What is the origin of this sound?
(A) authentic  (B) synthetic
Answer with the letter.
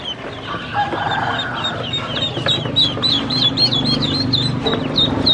A